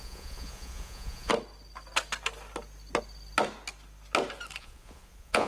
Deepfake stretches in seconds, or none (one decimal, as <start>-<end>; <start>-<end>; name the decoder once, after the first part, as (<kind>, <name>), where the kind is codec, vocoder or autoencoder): 0.0-1.3 (vocoder, Vocos); 4.6-5.5